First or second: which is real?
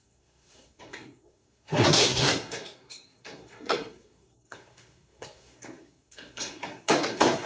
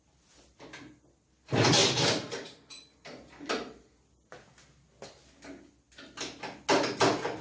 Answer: second